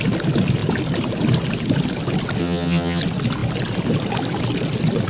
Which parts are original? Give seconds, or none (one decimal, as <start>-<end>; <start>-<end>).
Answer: 0.0-2.4; 3.0-5.1